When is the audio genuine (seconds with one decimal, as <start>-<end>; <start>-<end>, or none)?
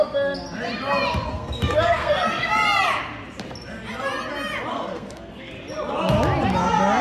0.0-1.3; 2.5-4.7; 5.5-7.0